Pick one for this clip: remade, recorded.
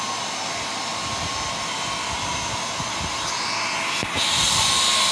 recorded